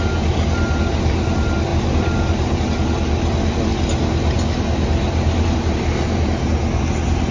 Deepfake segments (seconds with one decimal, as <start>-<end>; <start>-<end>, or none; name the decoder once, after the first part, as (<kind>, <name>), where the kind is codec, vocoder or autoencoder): none